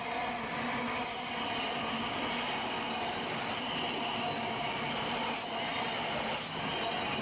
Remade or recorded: recorded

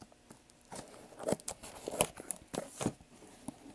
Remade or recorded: recorded